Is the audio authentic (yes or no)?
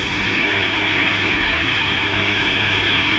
no